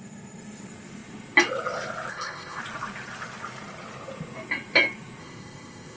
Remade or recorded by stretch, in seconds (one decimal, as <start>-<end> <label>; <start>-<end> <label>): 0.0-2.1 recorded; 2.1-2.6 remade; 2.6-5.2 recorded; 5.2-6.0 remade